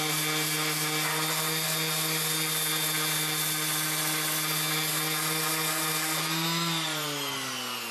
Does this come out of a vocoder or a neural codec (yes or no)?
no